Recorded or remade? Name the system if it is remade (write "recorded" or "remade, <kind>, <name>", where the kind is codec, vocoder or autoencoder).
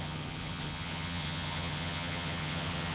remade, vocoder, HiFi-GAN